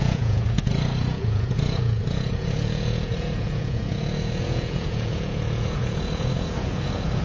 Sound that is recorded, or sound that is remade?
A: remade